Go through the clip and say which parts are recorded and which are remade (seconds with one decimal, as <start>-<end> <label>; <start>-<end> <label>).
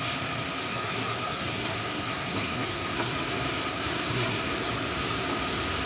0.0-0.7 recorded; 0.7-3.1 remade; 3.1-3.7 recorded; 3.7-4.4 remade; 4.4-5.9 recorded